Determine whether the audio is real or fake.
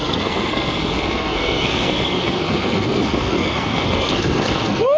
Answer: fake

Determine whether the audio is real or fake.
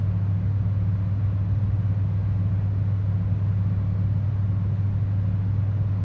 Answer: real